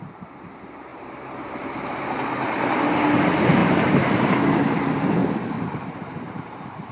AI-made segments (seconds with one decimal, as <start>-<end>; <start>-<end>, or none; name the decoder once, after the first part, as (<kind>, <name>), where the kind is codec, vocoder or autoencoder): 0.9-2.0 (vocoder, BigVGAN v2); 3.6-4.4; 5.2-6.9